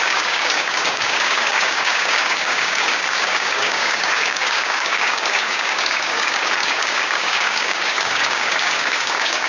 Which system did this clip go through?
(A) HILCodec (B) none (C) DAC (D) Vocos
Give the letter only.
C